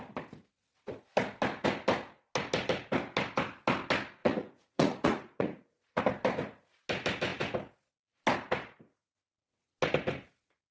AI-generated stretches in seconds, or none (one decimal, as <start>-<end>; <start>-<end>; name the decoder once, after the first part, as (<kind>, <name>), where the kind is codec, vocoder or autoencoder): 4.2-6.0 (vocoder, Vocos)